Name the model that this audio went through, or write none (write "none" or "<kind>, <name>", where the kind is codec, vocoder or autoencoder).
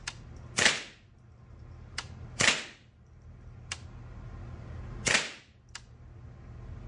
none